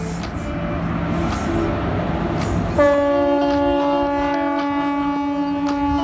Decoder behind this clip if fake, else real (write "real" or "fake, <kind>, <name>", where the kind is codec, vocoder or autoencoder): real